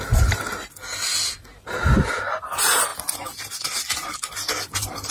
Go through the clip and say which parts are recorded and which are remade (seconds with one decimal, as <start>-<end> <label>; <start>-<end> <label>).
0.0-2.9 recorded; 2.9-3.5 remade; 3.5-5.1 recorded